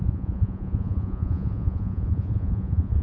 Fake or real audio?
fake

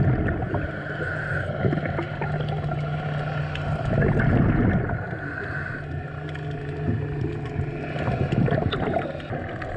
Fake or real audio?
real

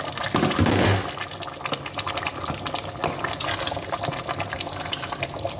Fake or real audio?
real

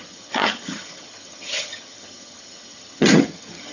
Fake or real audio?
fake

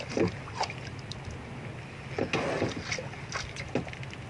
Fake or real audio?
real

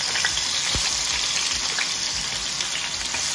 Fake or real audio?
real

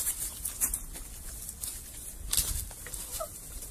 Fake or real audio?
real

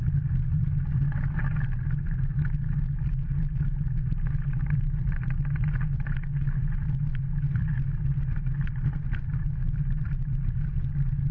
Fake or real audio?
real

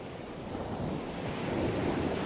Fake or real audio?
real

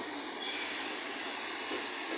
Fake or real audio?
real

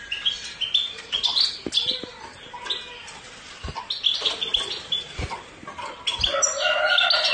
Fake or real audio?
real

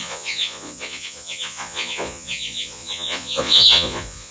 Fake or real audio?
fake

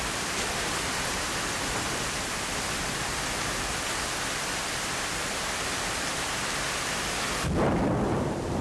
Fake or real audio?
fake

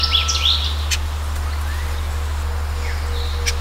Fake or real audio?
real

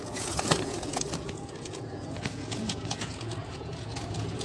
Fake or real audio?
fake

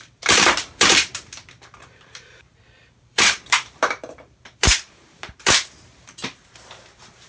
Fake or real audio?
fake